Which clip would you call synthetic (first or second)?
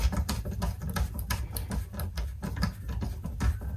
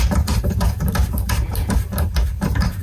second